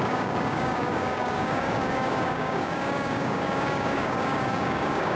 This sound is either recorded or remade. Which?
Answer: remade